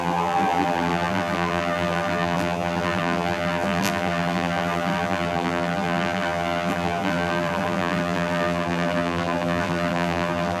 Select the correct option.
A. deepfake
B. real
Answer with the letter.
A